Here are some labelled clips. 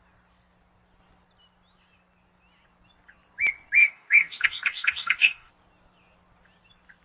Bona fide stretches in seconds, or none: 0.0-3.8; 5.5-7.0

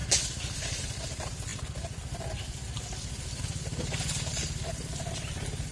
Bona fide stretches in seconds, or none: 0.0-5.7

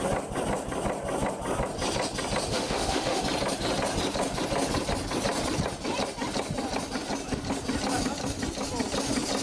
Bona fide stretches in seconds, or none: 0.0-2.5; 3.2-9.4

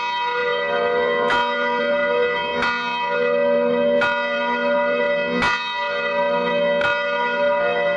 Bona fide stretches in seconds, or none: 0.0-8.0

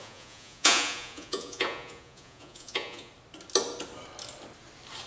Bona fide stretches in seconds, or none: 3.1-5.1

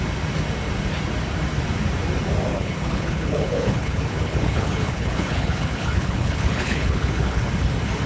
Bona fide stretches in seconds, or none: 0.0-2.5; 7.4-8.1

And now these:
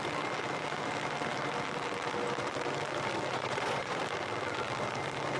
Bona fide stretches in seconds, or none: 0.0-3.3; 4.0-5.4

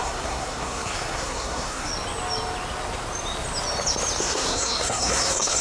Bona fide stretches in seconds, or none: 1.9-4.2